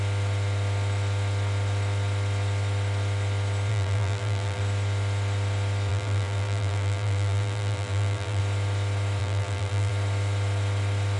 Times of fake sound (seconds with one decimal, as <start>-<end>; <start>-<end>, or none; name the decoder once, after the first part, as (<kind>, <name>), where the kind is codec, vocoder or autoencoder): 3.7-4.6 (vocoder, BigVGAN v2); 5.9-8.4; 9.2-9.9